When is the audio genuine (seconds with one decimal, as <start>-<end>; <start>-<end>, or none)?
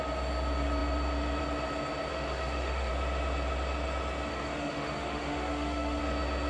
0.0-2.1; 2.9-4.3; 6.0-6.5